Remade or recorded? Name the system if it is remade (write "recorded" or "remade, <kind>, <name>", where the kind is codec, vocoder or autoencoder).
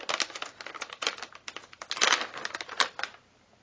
recorded